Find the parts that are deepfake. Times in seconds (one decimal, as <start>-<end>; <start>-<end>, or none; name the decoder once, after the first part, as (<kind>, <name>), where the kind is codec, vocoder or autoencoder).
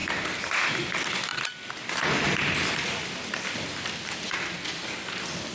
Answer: none